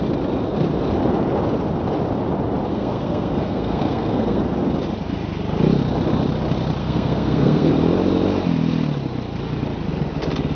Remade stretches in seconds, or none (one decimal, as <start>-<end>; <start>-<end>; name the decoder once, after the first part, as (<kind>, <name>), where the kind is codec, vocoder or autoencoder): 2.7-4.4 (codec, SNAC); 6.8-7.7